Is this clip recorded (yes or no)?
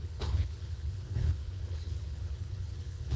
no